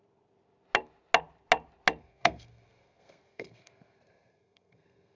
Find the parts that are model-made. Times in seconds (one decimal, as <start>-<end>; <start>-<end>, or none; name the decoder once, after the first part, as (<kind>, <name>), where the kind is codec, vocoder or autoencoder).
2.0-5.2 (codec, SNAC)